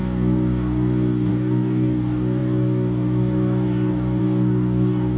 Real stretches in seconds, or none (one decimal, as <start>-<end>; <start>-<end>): none